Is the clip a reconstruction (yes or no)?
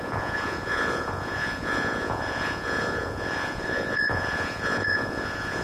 yes